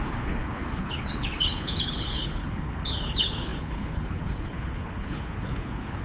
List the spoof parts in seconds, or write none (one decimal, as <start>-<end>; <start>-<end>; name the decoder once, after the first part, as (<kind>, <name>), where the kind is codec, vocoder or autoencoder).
0.0-6.0 (codec, HILCodec)